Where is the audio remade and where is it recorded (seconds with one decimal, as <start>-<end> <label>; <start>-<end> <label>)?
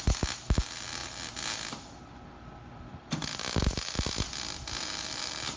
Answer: 0.0-5.6 recorded